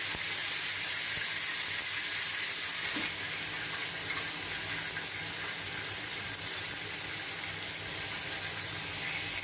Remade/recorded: recorded